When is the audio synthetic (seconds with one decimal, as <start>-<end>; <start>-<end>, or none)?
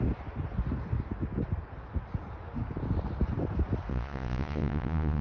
3.9-5.2